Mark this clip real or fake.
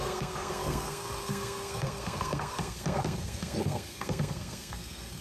fake